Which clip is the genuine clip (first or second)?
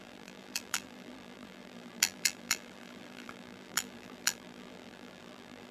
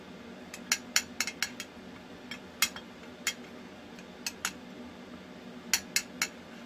second